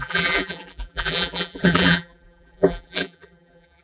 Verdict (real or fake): fake